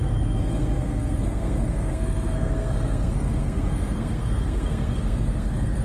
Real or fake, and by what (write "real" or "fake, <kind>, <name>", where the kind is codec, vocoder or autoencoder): fake, codec, SNAC